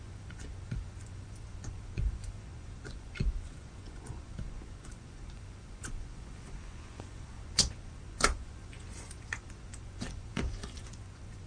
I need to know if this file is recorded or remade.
remade